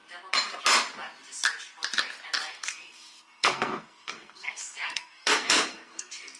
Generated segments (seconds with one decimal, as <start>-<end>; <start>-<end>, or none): 2.5-6.4